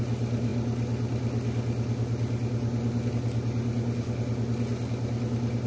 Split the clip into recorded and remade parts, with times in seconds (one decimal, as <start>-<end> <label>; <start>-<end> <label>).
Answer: 0.0-5.7 recorded